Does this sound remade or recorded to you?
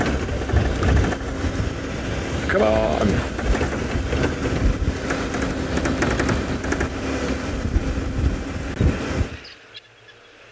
recorded